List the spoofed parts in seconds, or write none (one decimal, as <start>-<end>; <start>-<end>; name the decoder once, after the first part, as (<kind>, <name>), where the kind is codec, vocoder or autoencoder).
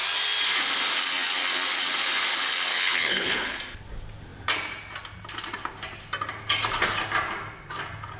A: 2.7-3.6 (codec, HILCodec)